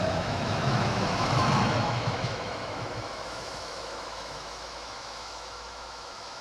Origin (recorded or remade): remade